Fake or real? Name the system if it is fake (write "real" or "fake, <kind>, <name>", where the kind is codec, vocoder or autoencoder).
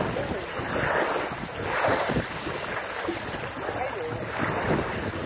real